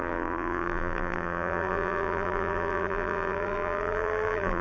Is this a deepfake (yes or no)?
yes